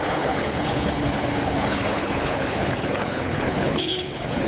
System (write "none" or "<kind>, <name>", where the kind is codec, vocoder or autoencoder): codec, HILCodec